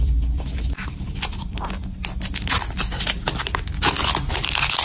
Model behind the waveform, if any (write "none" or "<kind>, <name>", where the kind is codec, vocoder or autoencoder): none